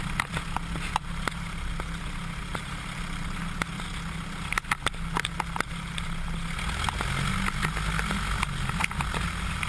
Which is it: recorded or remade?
recorded